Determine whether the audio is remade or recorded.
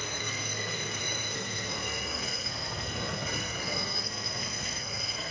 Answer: remade